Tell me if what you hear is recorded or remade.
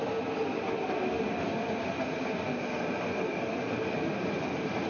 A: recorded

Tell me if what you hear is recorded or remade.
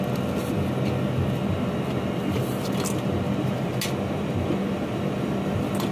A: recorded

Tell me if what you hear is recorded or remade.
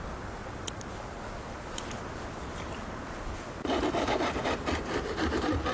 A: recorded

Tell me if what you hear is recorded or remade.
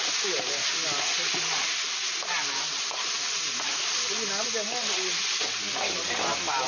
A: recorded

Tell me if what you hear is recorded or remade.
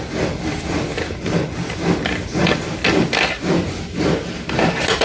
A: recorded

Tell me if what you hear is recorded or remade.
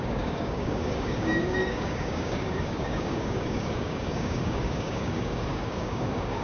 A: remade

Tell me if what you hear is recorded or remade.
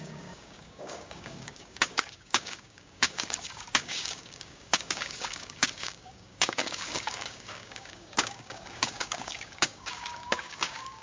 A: remade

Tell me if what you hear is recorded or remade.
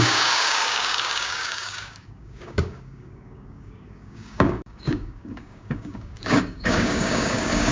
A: remade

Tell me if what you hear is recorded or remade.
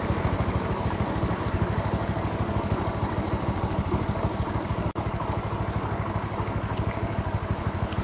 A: remade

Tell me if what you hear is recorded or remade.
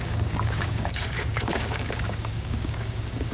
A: remade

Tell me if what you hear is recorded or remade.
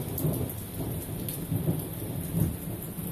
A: recorded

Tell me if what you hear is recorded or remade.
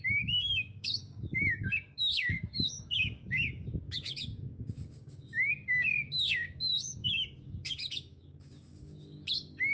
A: remade